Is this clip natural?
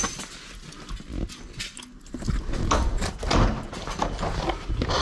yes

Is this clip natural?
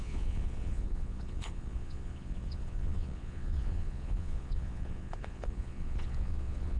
no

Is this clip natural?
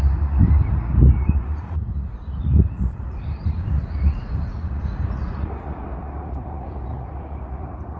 no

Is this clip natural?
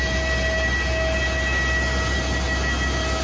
yes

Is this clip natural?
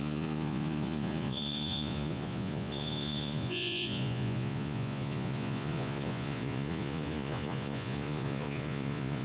no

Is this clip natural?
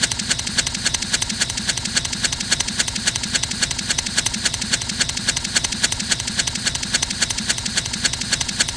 no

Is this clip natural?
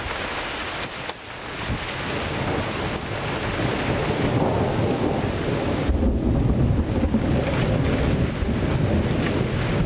yes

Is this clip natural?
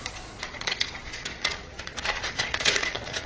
no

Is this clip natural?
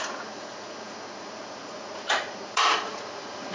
no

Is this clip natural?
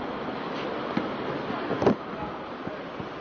yes